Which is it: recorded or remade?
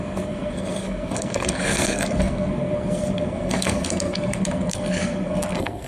remade